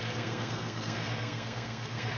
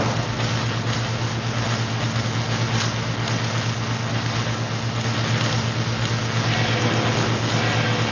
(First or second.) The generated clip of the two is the first